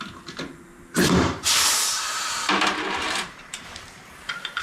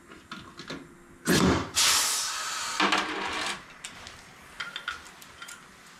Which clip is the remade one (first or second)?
first